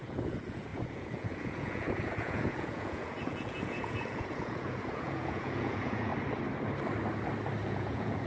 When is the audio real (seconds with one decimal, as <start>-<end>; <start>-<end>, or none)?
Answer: 6.1-7.6

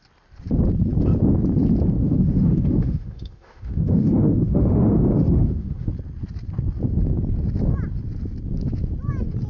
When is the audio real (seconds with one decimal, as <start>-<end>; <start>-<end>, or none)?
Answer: 0.0-2.0; 5.9-9.5

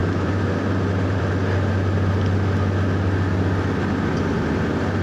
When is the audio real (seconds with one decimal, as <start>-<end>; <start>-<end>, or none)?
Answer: 1.2-5.0

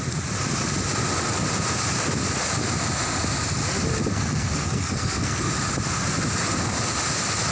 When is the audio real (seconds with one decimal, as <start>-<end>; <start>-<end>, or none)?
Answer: 0.0-4.1; 5.5-7.5

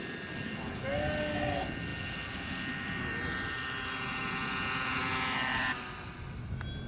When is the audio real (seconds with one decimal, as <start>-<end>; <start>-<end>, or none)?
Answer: 0.0-6.9

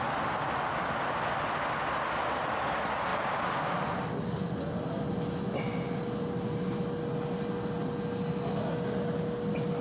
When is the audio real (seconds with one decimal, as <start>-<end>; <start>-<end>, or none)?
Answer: 0.0-9.8

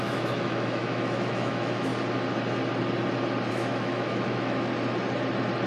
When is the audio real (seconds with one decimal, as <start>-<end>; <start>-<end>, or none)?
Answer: 1.9-3.5; 4.7-5.7